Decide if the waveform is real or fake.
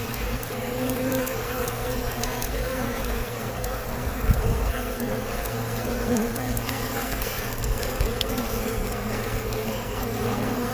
fake